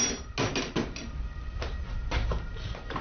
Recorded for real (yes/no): yes